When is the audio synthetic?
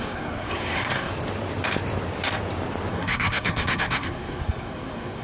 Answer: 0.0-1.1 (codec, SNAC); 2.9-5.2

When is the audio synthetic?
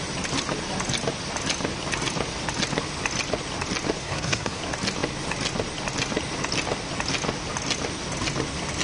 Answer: 4.0-4.6 (codec, SNAC)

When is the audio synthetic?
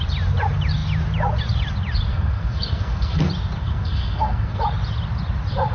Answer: 2.1-3.2 (codec, SNAC); 3.6-4.6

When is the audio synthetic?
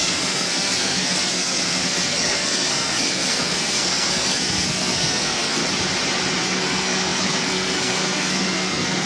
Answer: 0.0-5.6 (codec, SNAC); 6.4-9.1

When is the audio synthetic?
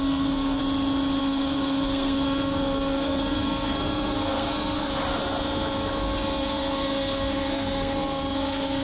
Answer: 0.0-0.6 (codec, SNAC); 1.2-4.9; 6.4-8.8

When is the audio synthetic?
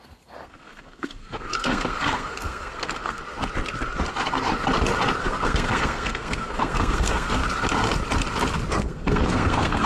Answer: 0.0-3.2 (codec, SNAC); 5.2-7.4; 8.8-9.9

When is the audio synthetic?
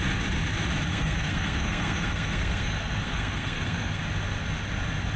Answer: 0.9-4.0 (codec, SNAC)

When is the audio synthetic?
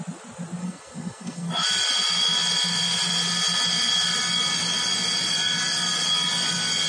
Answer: 0.6-1.5 (codec, SNAC)